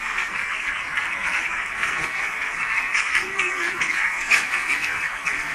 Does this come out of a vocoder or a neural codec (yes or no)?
yes